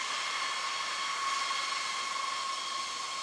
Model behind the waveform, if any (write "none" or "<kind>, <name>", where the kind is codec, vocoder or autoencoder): none